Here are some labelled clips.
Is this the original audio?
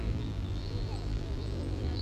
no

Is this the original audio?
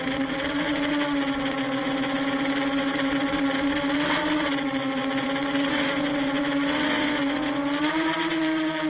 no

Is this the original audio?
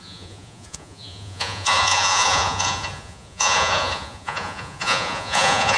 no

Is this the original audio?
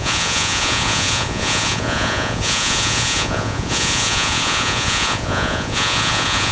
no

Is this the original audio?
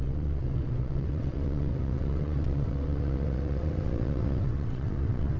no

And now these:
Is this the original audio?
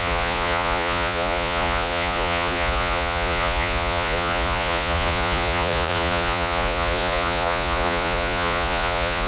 no